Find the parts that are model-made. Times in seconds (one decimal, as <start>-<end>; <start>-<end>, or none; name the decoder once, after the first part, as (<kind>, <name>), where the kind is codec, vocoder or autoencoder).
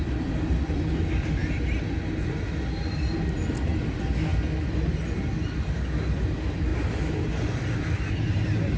none